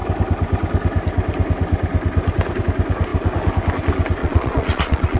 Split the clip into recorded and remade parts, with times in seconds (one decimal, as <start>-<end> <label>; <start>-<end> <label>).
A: 0.0-4.2 recorded; 4.2-5.2 remade